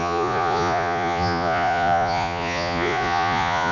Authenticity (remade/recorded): remade